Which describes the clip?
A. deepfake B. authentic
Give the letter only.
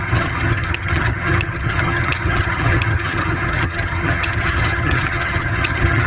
A